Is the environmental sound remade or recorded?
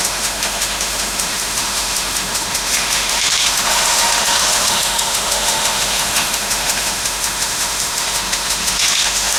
remade